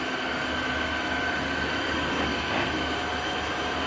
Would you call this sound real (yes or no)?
yes